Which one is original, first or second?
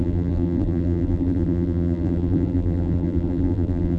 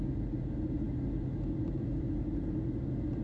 second